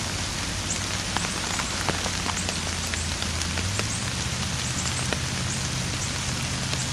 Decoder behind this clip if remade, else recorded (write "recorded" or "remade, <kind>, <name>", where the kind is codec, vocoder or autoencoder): recorded